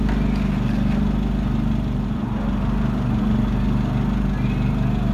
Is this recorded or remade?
recorded